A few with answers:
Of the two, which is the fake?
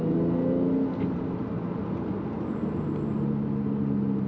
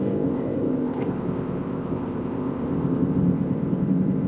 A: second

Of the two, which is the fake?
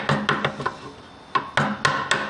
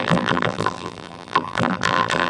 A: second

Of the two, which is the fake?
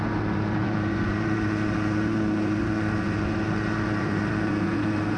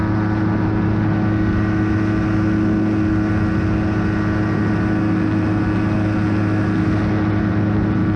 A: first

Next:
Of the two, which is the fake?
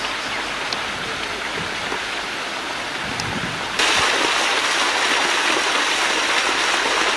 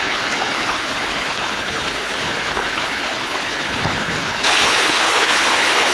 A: second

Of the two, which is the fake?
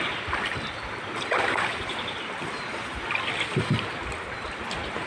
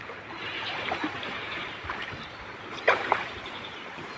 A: second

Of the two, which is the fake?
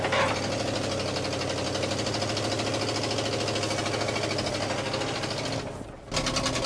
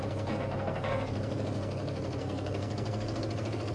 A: second